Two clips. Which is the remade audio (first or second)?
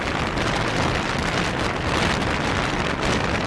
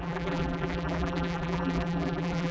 second